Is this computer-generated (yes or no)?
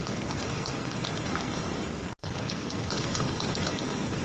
yes